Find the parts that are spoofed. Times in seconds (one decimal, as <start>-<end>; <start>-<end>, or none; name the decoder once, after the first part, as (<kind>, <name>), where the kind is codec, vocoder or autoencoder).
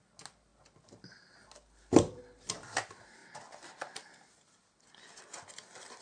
none